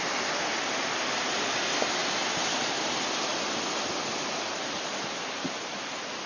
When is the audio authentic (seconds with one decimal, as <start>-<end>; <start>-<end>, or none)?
0.0-6.3